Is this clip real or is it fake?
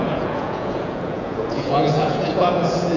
fake